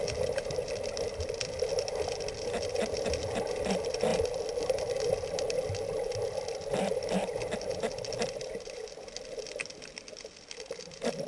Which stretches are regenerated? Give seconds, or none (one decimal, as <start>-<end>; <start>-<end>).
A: none